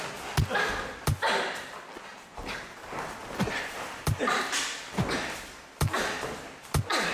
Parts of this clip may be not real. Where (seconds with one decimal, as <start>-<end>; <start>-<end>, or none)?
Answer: 2.1-4.5